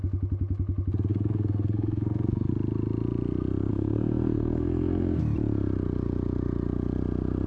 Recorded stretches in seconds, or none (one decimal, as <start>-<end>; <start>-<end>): 0.0-1.1; 2.5-3.7; 5.2-7.5